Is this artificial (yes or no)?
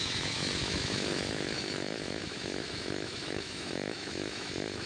yes